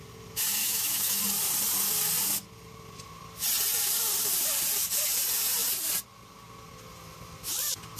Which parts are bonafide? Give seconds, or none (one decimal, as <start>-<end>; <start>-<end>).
0.0-0.6; 1.2-8.0